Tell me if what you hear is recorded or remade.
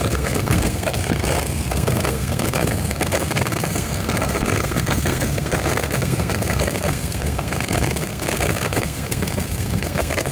remade